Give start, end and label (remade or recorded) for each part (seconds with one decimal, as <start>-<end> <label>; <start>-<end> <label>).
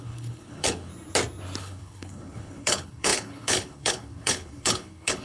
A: 0.0-0.9 remade; 0.9-1.6 recorded; 1.6-5.2 remade